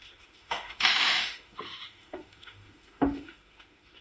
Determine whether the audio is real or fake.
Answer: fake